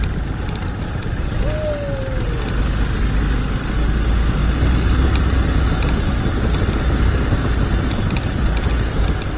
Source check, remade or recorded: recorded